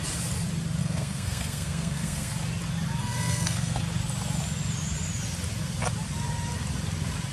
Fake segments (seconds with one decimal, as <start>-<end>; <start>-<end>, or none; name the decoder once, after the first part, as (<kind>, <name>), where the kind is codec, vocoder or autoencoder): 0.8-2.3 (codec, SNAC); 3.0-3.8